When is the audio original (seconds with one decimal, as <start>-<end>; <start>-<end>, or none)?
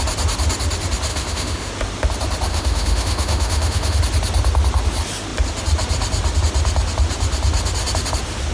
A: 0.0-1.1; 1.7-2.5; 4.0-8.5